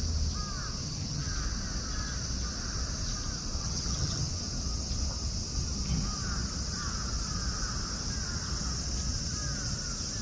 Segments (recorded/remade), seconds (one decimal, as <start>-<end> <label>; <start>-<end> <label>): 0.0-0.8 recorded; 0.8-1.3 remade; 1.3-3.6 recorded; 3.6-4.3 remade; 4.3-10.2 recorded